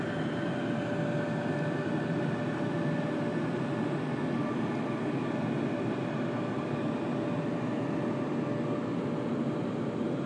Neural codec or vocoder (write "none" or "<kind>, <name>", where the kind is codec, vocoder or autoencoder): none